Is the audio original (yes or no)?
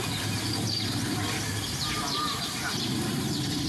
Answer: yes